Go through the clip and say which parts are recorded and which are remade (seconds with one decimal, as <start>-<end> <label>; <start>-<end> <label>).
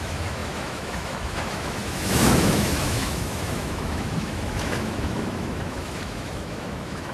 0.0-7.1 remade